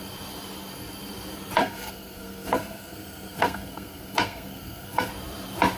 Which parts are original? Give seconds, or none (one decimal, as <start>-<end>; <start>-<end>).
0.0-1.6; 5.1-5.8